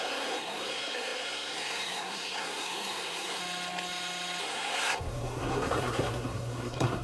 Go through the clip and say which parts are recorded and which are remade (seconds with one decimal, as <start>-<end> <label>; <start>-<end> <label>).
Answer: 0.0-3.4 remade; 3.4-4.4 recorded; 4.4-7.0 remade